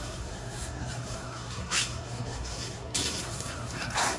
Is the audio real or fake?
fake